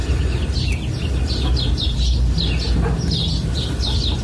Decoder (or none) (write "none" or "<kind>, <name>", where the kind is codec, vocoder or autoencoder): none